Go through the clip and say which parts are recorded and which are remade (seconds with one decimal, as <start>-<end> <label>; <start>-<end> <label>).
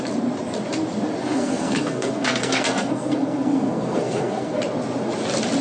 0.0-1.2 recorded; 1.2-4.6 remade; 4.6-5.6 recorded